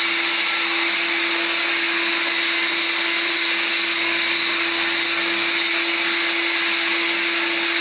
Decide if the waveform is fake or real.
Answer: real